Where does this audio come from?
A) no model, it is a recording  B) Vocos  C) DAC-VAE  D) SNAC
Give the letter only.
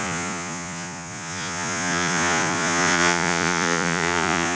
B